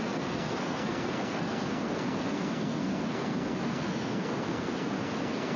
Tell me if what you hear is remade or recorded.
remade